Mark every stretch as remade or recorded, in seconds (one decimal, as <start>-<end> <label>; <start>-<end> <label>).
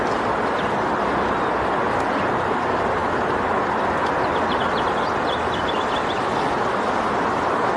0.0-7.8 recorded